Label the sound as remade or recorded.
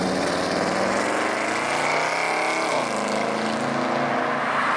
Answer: recorded